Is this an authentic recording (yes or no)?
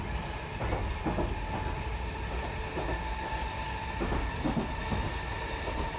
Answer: yes